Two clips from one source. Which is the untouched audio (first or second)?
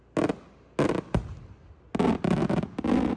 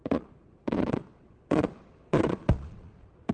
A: first